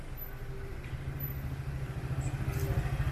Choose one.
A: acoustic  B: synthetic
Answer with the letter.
A